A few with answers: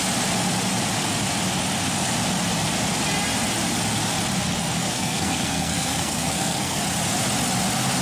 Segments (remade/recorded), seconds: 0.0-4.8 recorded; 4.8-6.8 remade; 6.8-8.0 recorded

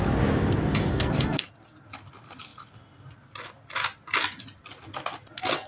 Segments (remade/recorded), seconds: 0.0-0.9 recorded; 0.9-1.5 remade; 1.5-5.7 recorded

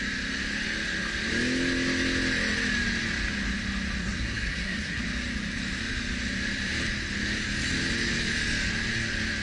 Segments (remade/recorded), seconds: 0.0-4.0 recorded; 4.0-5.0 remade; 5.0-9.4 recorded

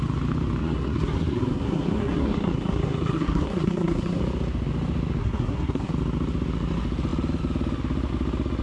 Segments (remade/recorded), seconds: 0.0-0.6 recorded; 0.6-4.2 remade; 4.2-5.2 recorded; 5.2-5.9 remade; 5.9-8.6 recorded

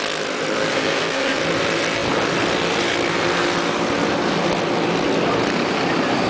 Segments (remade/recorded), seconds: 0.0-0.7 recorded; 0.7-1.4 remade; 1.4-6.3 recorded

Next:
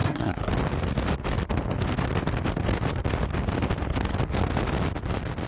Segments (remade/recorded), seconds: 0.0-0.5 remade; 0.5-5.5 recorded

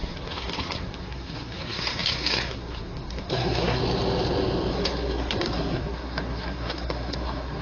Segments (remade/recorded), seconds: 0.0-3.8 remade; 3.8-4.7 recorded; 4.7-7.6 remade

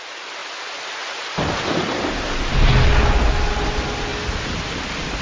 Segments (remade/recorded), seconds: 0.0-5.2 recorded